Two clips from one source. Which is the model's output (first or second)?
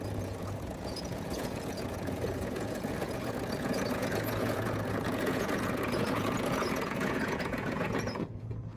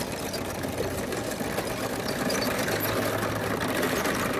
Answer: first